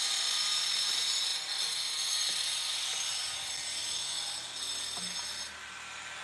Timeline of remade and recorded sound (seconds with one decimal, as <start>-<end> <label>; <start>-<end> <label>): 0.0-6.2 recorded